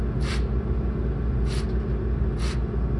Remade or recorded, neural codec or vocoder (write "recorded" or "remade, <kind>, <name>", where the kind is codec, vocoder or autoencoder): recorded